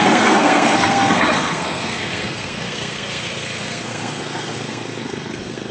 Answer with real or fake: fake